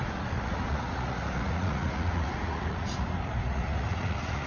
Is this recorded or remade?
remade